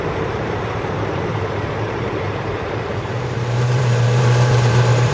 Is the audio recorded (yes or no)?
no